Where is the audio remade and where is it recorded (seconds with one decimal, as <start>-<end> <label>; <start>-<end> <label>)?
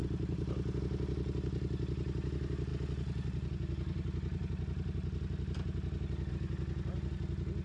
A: 0.0-7.6 recorded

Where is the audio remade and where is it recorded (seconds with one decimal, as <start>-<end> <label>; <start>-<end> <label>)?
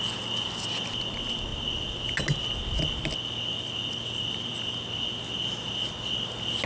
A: 0.0-6.7 recorded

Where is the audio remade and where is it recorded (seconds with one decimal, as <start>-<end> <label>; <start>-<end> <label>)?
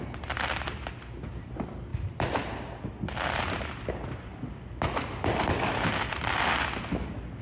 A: 0.0-1.9 recorded; 1.9-2.8 remade; 2.8-4.3 recorded; 4.3-6.6 remade; 6.6-7.4 recorded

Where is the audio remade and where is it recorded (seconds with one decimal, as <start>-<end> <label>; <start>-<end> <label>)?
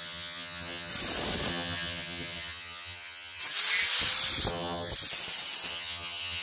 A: 0.0-0.9 remade; 0.9-1.5 recorded; 1.5-3.4 remade; 3.4-4.5 recorded; 4.5-4.9 remade; 4.9-5.7 recorded; 5.7-6.4 remade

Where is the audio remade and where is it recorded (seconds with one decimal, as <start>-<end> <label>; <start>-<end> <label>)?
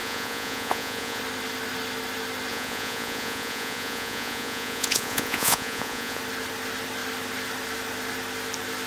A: 0.0-1.2 remade; 1.2-2.5 recorded; 2.5-6.2 remade; 6.2-8.9 recorded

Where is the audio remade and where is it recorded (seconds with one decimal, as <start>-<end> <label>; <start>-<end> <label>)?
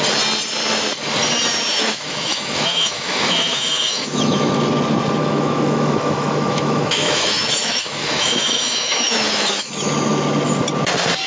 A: 0.0-1.7 recorded; 1.7-4.5 remade; 4.5-5.2 recorded; 5.2-9.7 remade; 9.7-11.3 recorded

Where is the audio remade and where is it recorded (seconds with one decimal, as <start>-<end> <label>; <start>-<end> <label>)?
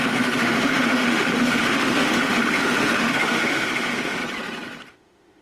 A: 0.0-4.2 remade; 4.2-4.9 recorded; 4.9-5.4 remade